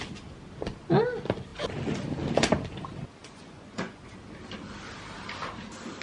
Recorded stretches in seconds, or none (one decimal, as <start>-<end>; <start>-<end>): 0.0-3.2; 4.1-6.0

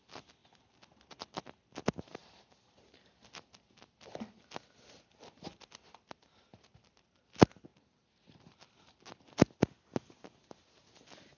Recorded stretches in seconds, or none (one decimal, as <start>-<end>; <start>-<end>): 0.0-11.4